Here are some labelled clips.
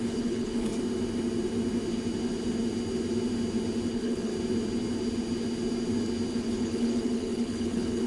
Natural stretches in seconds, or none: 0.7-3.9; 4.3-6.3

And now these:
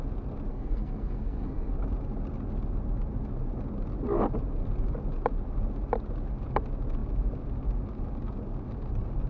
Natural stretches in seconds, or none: 0.0-0.5; 1.7-9.3

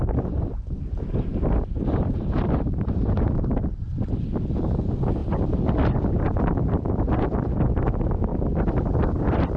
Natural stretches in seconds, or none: none